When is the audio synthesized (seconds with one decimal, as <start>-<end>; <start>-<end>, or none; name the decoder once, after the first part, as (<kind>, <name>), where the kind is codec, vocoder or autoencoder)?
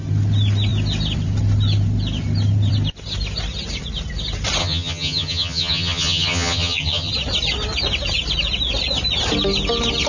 4.6-7.1 (vocoder, HiFi-GAN)